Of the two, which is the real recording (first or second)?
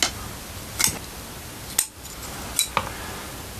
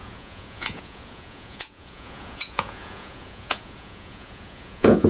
first